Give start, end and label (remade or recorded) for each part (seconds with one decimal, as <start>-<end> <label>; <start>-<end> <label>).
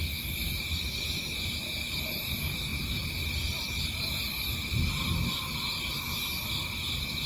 0.0-7.3 recorded